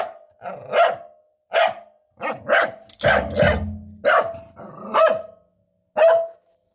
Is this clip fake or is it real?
real